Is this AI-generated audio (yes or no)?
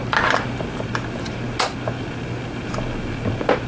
no